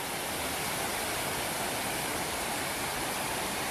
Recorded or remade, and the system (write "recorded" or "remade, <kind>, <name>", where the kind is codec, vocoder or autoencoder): recorded